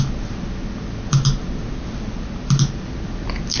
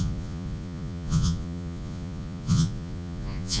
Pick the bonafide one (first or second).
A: first